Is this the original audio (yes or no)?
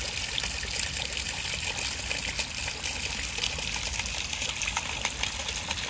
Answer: yes